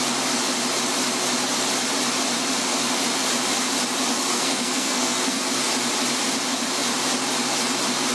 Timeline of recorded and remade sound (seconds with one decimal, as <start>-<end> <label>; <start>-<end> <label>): 0.0-4.1 recorded; 4.1-5.4 remade; 5.4-8.1 recorded